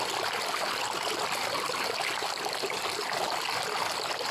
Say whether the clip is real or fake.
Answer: real